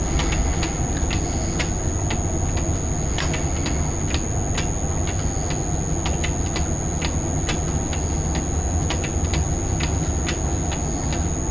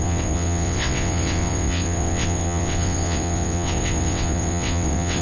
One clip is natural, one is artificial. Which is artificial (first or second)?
second